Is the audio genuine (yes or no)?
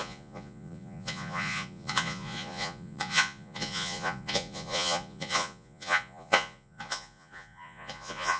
no